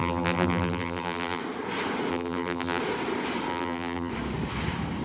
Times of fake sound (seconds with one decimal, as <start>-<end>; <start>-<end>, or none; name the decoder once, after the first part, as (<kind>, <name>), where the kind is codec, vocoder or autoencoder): 0.0-1.4 (vocoder, BigVGAN v2); 2.1-2.8; 3.5-4.1